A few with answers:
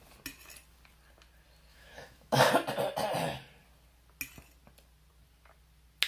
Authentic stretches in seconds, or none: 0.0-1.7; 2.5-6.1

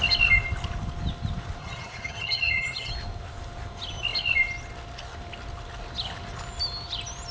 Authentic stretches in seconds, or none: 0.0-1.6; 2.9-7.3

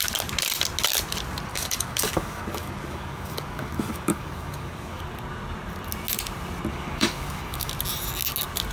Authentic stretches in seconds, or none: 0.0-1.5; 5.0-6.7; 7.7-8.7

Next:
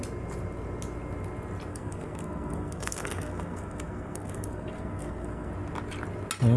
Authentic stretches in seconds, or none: 0.0-1.7; 5.5-6.6

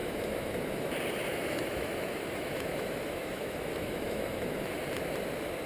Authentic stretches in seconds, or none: 0.9-1.3; 4.7-5.7

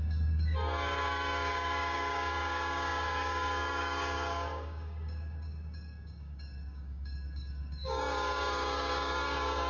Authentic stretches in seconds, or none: none

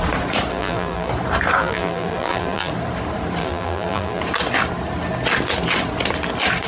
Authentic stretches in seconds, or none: 0.0-0.5; 1.1-1.6; 2.7-3.4; 4.2-6.7

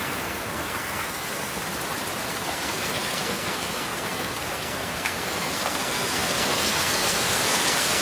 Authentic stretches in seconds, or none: 1.6-2.3